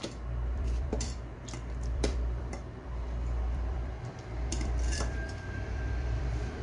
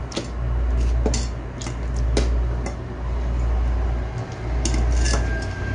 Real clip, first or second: second